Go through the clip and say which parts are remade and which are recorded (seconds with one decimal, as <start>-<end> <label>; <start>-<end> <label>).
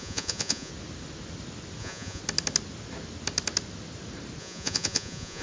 0.0-0.7 remade; 0.7-1.8 recorded; 1.8-2.2 remade; 2.2-4.4 recorded; 4.4-5.4 remade